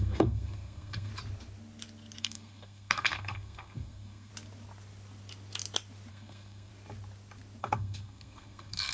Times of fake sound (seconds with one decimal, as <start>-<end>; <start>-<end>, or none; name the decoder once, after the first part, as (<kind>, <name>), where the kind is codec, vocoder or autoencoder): 0.0-1.1 (codec, SNAC); 2.2-4.3; 6.1-6.7; 7.6-8.9